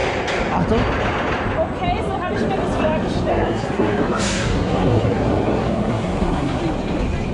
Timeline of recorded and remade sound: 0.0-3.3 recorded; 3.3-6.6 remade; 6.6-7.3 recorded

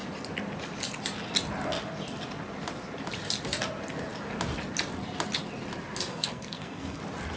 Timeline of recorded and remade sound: 0.0-6.1 recorded; 6.1-7.0 remade; 7.0-7.4 recorded

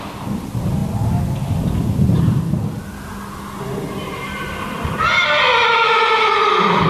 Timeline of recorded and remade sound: 0.0-6.9 recorded

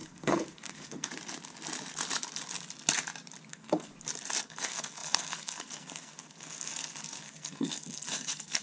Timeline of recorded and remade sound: 0.0-1.1 remade; 1.1-3.5 recorded; 3.5-3.9 remade; 3.9-4.4 recorded; 4.4-8.6 remade

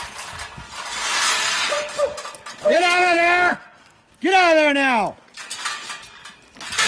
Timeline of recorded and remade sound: 0.0-2.6 recorded; 2.6-4.1 remade; 4.1-6.9 recorded